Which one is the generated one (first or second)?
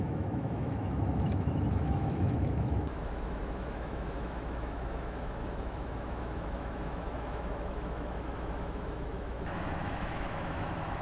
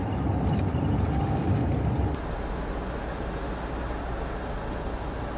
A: first